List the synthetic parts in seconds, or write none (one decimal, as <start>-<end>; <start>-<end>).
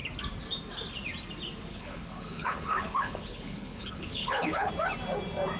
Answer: 1.7-4.7